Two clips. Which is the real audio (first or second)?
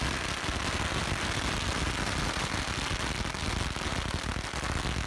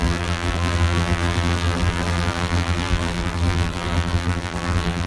first